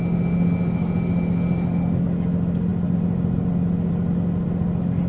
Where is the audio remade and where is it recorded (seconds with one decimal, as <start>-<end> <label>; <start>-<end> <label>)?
0.0-5.1 recorded